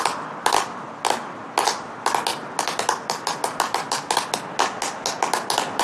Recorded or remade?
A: recorded